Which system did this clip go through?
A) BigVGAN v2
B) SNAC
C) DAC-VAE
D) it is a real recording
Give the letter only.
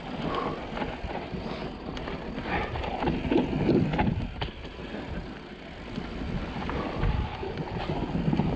D